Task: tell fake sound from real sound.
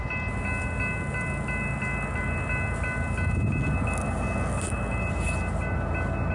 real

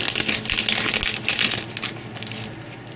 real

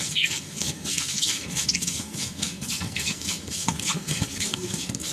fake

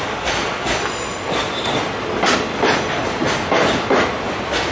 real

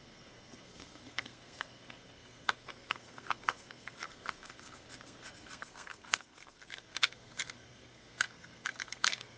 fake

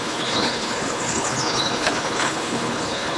fake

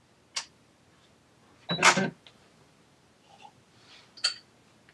real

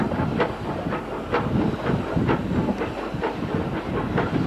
real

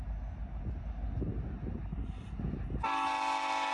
real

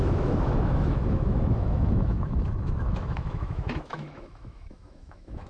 fake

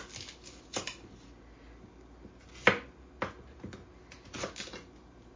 real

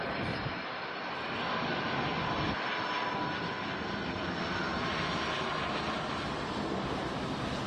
real